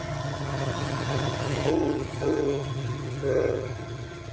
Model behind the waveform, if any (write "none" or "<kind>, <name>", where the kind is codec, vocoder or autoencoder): vocoder, HiFi-GAN